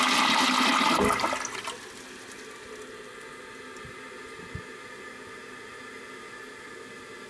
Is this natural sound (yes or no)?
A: yes